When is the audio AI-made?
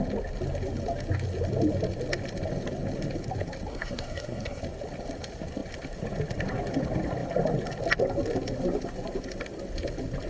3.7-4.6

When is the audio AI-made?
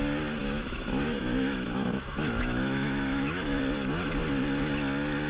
0.4-3.6